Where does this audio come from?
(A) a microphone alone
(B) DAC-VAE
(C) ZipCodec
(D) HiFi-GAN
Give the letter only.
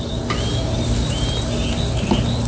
A